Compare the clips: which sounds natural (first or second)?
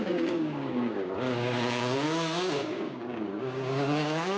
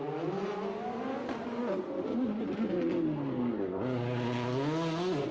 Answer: second